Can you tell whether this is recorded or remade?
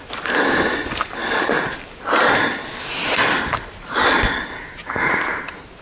recorded